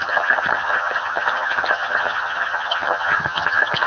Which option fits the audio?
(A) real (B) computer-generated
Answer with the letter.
B